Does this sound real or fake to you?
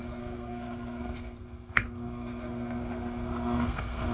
fake